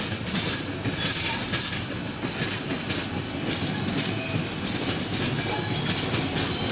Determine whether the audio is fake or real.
real